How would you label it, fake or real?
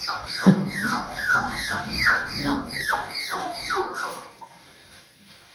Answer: fake